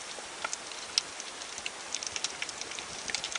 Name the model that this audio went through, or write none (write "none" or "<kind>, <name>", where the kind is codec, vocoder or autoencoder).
none